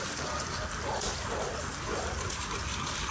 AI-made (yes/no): no